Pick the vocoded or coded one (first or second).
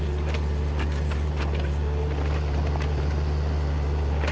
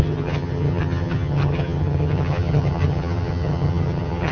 second